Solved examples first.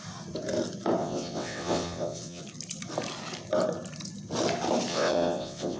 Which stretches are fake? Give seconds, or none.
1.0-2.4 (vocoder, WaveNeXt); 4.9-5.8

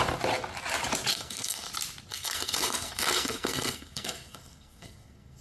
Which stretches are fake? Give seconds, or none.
1.1-1.7 (codec, SNAC); 2.1-5.4

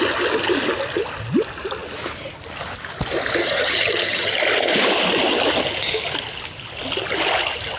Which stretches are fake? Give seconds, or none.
3.4-4.3 (vocoder, HiFi-GAN)

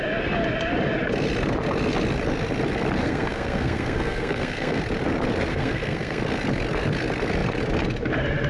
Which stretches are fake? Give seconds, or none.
3.0-4.8 (codec, SNAC); 5.5-6.2

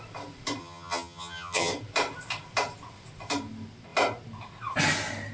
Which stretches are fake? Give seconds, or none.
0.6-1.7 (vocoder, HiFi-GAN)